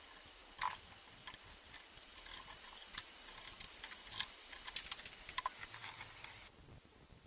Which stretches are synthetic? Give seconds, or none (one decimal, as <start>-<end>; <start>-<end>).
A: 0.4-0.9; 5.8-6.5